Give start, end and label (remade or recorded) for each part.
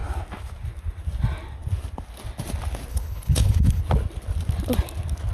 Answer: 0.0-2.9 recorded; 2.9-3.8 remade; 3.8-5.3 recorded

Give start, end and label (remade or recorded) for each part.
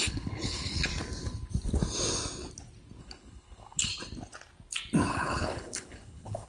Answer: 0.0-0.9 remade; 0.9-3.0 recorded; 3.0-3.9 remade; 3.9-5.1 recorded; 5.1-6.5 remade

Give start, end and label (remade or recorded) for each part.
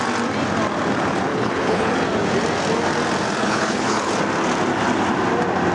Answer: 0.0-1.3 recorded; 1.3-1.9 remade; 1.9-3.4 recorded; 3.4-4.1 remade; 4.1-5.7 recorded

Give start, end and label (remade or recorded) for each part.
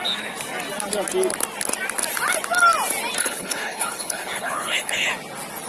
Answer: 0.0-3.2 recorded; 3.2-5.1 remade; 5.1-5.7 recorded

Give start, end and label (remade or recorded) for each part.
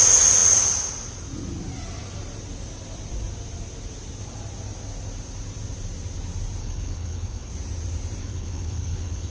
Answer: 0.0-6.6 recorded; 6.6-7.5 remade; 7.5-8.2 recorded; 8.2-9.3 remade